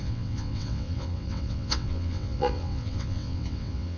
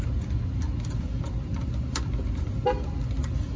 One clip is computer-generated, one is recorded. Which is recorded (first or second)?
second